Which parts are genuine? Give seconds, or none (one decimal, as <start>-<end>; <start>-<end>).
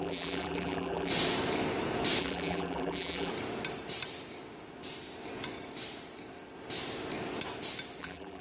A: 1.1-2.2; 3.3-8.0